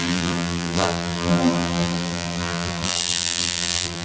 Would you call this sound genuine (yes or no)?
no